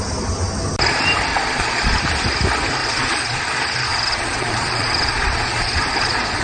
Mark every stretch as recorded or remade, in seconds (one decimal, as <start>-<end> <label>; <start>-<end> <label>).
0.0-1.3 recorded; 1.3-2.0 remade; 2.0-2.8 recorded; 2.8-3.4 remade; 3.4-3.9 recorded; 3.9-6.4 remade